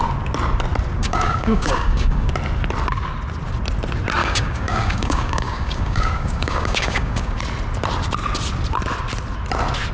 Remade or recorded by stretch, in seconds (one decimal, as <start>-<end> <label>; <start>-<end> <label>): 0.0-1.0 recorded; 1.0-2.3 remade; 2.3-4.2 recorded; 4.2-7.4 remade; 7.4-9.9 recorded